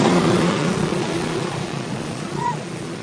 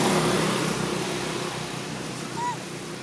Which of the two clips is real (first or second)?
second